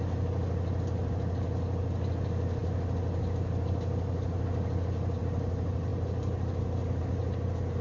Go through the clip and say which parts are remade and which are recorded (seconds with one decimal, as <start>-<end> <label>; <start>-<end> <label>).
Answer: 0.0-7.8 recorded

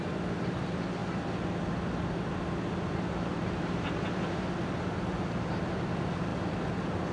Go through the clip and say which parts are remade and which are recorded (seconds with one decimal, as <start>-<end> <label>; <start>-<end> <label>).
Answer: 0.0-7.1 recorded

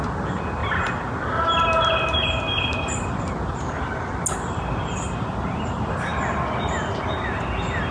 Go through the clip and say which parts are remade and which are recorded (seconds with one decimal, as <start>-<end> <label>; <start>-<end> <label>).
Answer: 0.0-7.9 recorded

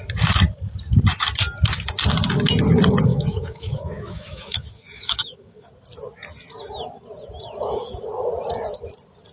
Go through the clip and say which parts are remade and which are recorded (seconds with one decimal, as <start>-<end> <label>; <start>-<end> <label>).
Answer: 0.0-3.1 recorded; 3.1-5.7 remade; 5.7-9.3 recorded

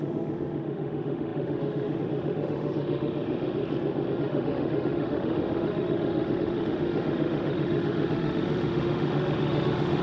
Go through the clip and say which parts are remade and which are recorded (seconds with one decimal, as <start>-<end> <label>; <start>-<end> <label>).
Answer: 0.0-3.6 remade; 3.6-4.1 recorded; 4.1-10.0 remade

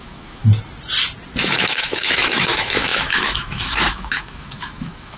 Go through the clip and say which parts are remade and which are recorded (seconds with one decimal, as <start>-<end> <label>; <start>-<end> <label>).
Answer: 0.0-0.4 remade; 0.4-1.4 recorded; 1.4-5.2 remade